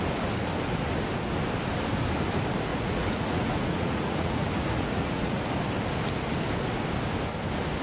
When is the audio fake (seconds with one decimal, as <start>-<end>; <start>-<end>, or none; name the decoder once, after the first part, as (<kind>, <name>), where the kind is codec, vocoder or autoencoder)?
2.7-5.4 (vocoder, Vocos)